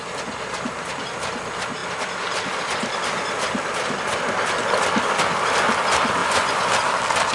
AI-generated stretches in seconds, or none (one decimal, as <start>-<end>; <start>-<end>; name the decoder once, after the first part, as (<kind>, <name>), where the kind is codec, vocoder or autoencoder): 6.2-6.7 (vocoder, Vocos)